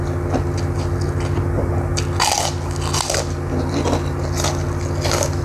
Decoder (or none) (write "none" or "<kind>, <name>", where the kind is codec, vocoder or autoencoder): none